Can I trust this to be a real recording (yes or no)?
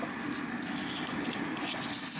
yes